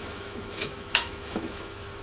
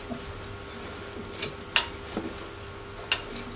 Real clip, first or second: second